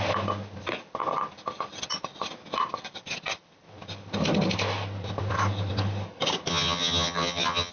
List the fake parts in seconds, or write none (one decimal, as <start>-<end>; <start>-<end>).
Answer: 6.5-7.7